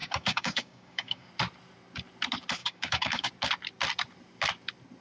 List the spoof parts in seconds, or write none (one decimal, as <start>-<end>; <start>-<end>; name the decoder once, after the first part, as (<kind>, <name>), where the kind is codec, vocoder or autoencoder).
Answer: 0.0-1.3 (codec, DAC); 2.6-3.3